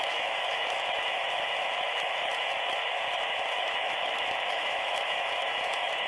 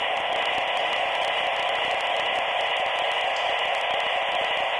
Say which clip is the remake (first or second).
first